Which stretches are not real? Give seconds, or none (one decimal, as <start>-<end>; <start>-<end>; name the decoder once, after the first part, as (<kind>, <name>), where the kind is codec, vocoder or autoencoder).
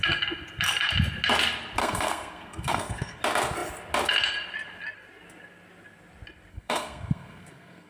1.8-3.2 (codec, SNAC); 6.5-7.9